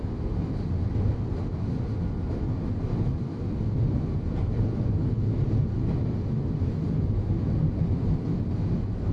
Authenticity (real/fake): real